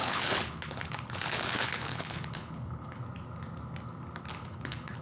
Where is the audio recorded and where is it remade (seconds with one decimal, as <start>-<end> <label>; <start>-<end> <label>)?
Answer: 0.0-3.0 remade; 3.0-4.4 recorded; 4.4-5.0 remade